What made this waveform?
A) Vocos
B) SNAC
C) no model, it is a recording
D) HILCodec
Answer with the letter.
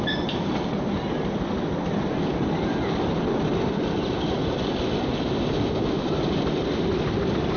C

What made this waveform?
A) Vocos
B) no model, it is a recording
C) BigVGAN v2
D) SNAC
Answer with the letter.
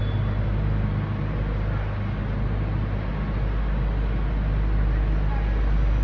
B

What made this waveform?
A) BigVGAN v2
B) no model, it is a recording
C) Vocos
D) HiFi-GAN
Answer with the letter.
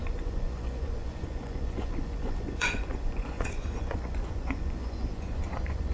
C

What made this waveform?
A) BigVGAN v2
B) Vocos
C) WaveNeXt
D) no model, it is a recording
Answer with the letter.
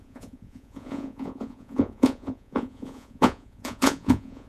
B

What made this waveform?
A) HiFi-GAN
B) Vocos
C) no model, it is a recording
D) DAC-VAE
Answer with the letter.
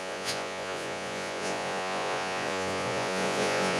B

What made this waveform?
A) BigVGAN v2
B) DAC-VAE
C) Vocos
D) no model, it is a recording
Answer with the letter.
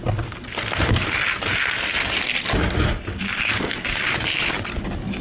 D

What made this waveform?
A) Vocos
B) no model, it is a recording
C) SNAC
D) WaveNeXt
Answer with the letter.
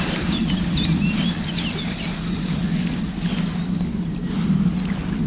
B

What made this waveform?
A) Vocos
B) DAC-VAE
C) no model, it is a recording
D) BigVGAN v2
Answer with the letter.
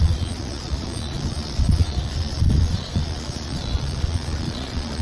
A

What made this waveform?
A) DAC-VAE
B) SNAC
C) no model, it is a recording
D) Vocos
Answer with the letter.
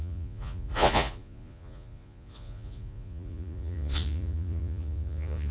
D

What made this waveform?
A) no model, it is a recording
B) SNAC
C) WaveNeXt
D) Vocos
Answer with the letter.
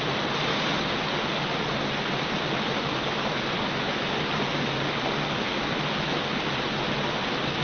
A